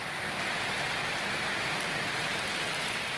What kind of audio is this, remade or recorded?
recorded